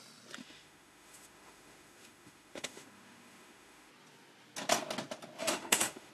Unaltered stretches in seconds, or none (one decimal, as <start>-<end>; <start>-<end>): 0.0-0.4; 3.9-5.4